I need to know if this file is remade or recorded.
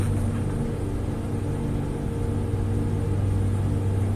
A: recorded